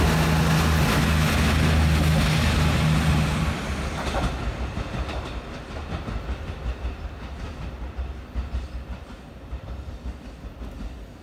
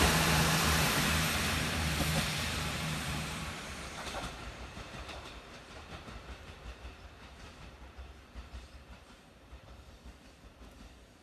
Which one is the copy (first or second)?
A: second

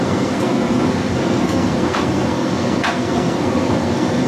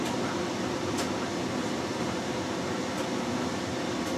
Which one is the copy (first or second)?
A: first